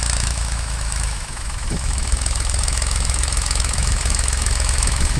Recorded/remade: remade